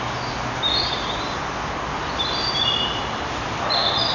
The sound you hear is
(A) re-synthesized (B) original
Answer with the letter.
B